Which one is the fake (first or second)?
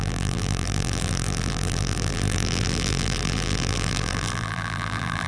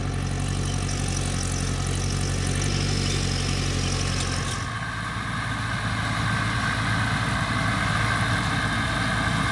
first